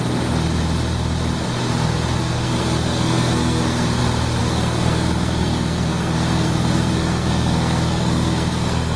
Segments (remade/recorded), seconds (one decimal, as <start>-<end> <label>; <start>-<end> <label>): 0.0-2.2 recorded; 2.2-4.0 remade; 4.0-4.4 recorded; 4.4-9.0 remade